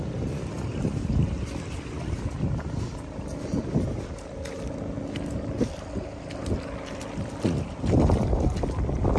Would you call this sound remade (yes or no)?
no